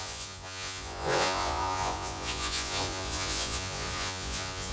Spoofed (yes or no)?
yes